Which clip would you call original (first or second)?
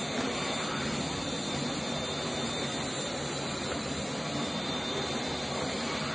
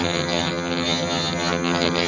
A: first